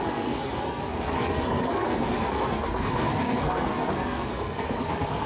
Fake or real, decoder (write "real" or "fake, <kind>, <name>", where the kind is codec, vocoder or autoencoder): fake, codec, SNAC